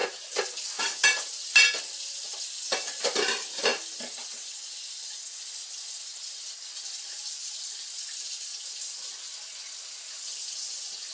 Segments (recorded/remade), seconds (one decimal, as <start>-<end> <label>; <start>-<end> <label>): 0.0-11.1 recorded